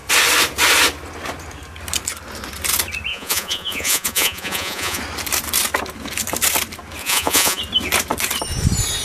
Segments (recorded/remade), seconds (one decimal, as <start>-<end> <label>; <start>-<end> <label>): 0.0-3.1 recorded; 3.1-5.0 remade; 5.0-7.0 recorded; 7.0-7.6 remade; 7.6-9.0 recorded